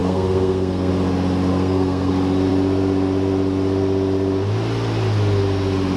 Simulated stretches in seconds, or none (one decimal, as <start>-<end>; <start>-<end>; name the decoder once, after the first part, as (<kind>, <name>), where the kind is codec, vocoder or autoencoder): 0.0-0.9 (codec, SNAC); 1.5-2.1